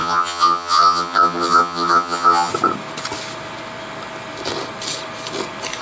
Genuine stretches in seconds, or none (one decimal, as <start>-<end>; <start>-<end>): 2.5-5.8